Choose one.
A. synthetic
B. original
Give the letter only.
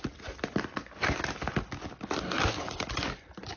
B